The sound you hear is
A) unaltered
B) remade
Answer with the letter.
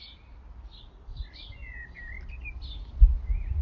A